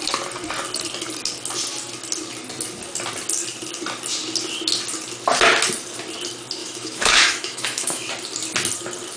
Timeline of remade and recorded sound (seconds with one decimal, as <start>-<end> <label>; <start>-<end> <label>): 0.0-6.6 recorded; 6.6-8.1 remade; 8.1-9.2 recorded